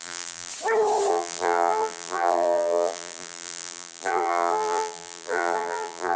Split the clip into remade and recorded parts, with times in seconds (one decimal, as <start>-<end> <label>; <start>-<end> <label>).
0.0-0.5 remade; 0.5-1.1 recorded; 1.1-6.2 remade

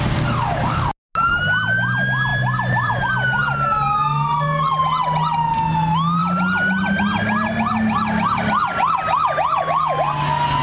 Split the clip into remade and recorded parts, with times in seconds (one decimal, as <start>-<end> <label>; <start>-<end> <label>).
0.0-2.3 recorded; 2.3-3.0 remade; 3.0-10.6 recorded

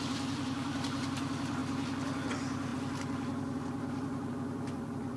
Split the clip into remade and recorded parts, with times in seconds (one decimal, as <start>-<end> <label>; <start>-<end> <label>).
0.0-1.6 remade; 1.6-2.3 recorded; 2.3-5.2 remade